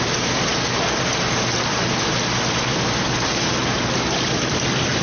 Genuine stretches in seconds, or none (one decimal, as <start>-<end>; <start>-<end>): 0.0-5.0